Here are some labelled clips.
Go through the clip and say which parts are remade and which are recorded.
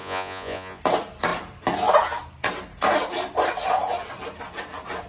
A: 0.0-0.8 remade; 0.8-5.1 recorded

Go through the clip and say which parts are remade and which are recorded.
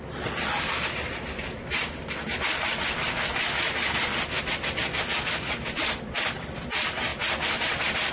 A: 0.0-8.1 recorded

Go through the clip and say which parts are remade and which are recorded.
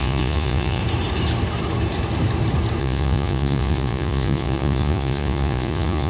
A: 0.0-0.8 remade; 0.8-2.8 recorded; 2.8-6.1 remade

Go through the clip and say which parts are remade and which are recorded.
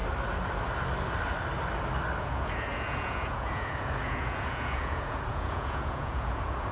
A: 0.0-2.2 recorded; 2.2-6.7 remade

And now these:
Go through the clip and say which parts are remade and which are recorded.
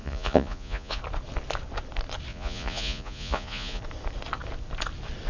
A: 0.0-1.0 remade; 1.0-2.3 recorded; 2.3-3.8 remade; 3.8-5.3 recorded